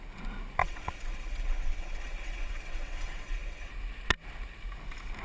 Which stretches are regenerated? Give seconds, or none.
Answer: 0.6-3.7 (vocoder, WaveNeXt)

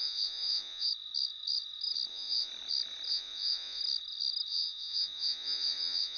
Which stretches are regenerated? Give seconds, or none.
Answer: 0.0-0.9 (vocoder, Vocos); 2.1-2.5; 3.1-3.8; 4.5-6.2

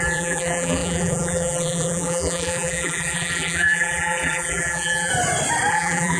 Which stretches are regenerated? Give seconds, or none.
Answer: 0.0-5.1 (vocoder, BigVGAN v2); 5.7-6.2

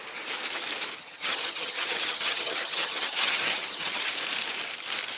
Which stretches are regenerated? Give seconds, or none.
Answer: 1.0-4.1 (vocoder, HiFi-GAN)

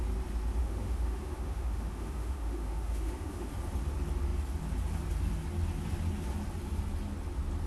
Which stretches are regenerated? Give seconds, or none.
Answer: 0.6-3.5 (autoencoder, DAC-VAE)

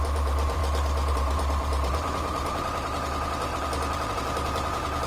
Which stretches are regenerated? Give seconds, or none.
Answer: 0.0-0.6 (vocoder, BigVGAN v2); 1.1-5.1

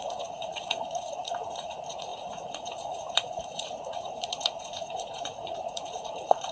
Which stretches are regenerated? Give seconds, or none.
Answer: 0.0-6.5 (vocoder, Vocos)